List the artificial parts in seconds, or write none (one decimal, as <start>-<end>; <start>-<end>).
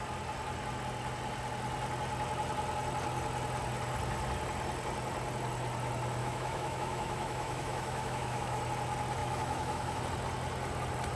6.2-8.6; 9.2-10.0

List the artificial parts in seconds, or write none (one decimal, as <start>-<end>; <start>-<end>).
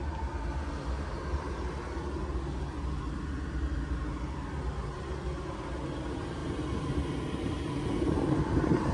none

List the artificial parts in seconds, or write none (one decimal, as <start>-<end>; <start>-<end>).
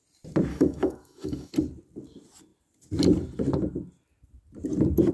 0.5-1.5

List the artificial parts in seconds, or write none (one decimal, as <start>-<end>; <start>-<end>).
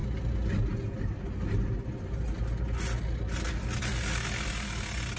none